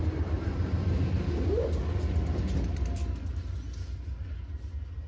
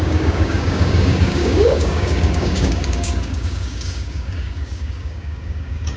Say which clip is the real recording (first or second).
first